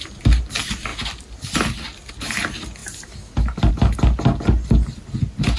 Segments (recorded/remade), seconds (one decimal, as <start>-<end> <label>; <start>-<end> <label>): 0.0-5.6 recorded